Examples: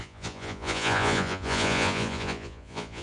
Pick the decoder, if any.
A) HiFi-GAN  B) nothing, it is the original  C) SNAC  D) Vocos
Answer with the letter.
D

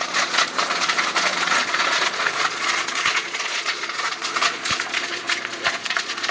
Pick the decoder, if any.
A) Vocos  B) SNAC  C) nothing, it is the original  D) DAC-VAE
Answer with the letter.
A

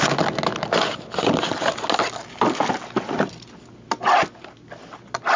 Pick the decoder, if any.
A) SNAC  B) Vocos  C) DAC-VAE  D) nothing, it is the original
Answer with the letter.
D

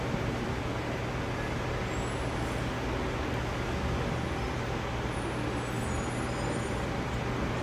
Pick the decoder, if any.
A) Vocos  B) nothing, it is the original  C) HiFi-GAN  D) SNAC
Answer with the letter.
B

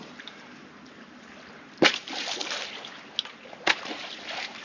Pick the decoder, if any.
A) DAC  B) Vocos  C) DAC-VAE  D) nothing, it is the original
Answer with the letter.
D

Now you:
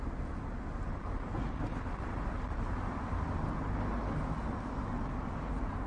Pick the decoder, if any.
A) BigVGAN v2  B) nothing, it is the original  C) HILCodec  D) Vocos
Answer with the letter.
B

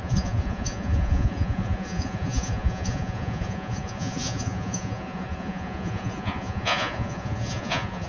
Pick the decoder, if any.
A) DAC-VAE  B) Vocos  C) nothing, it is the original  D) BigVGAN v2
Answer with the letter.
B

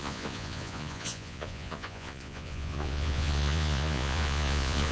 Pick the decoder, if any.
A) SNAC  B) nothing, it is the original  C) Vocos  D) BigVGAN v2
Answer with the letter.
C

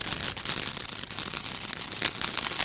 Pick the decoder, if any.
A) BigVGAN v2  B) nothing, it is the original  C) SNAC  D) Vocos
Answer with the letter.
B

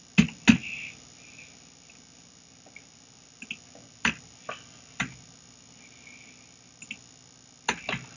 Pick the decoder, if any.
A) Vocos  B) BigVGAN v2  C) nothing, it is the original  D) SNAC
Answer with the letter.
C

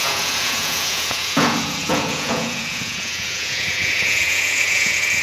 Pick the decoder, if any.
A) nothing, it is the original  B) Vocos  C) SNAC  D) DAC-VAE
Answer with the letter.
B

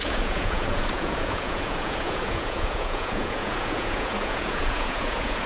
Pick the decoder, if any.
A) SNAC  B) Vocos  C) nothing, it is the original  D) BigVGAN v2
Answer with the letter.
B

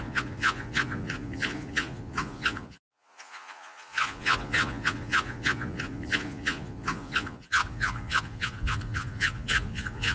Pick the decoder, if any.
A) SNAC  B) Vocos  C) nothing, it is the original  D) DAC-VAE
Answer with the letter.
B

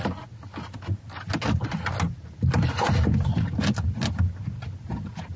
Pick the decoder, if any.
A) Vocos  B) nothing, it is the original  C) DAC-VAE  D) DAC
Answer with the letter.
B